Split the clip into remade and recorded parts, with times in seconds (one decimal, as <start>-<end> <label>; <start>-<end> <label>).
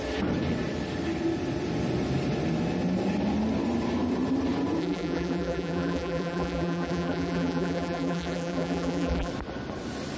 0.0-4.8 recorded; 4.8-9.3 remade; 9.3-10.2 recorded